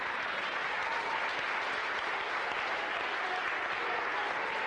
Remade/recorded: recorded